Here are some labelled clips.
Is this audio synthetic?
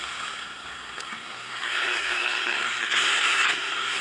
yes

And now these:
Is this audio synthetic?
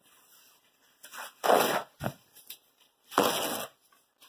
no